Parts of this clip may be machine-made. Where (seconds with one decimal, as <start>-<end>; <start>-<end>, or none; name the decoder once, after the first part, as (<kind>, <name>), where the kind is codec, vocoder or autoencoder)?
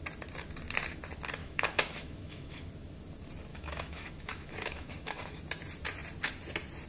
1.4-2.7 (autoencoder, DAC-VAE); 3.5-5.4